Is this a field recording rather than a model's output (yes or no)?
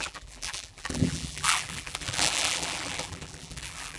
no